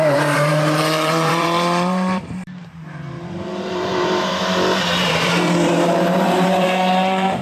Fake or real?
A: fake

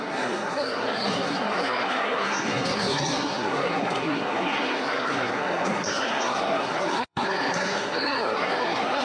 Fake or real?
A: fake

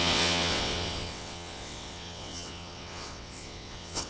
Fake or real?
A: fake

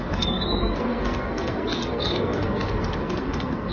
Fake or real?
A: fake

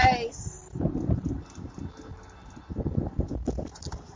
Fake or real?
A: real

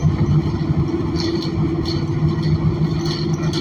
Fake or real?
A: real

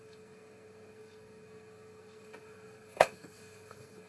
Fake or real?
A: fake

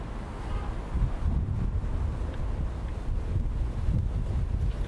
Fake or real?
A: real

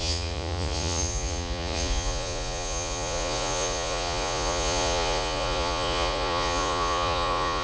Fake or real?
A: fake